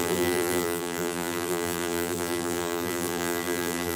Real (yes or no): no